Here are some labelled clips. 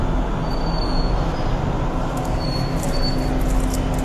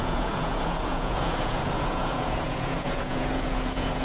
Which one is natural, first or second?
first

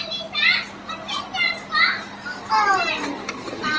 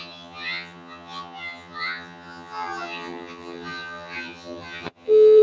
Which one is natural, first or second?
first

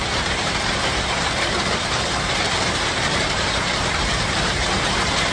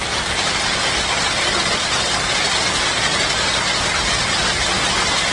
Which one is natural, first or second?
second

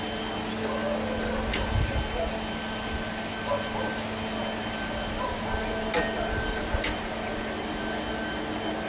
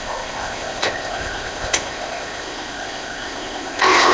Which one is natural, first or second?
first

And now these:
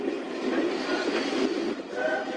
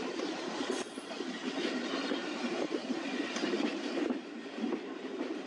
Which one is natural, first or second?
first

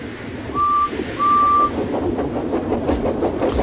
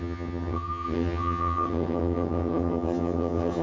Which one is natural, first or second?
first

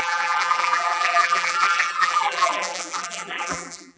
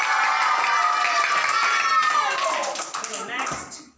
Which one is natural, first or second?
second